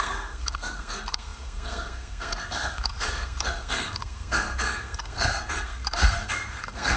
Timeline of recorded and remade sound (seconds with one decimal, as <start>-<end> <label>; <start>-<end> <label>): 0.0-7.0 remade